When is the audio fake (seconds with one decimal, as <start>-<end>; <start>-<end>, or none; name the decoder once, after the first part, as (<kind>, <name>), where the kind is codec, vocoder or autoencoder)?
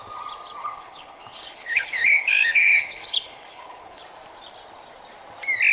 0.6-4.0 (codec, HILCodec)